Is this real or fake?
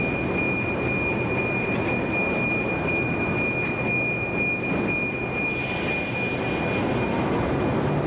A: real